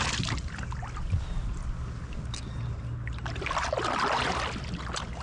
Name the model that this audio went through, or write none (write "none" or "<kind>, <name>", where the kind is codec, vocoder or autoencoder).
none